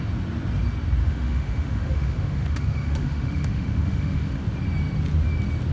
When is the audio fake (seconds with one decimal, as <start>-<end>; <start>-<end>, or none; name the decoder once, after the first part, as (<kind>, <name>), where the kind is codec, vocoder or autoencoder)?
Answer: 1.0-4.4 (autoencoder, DAC-VAE)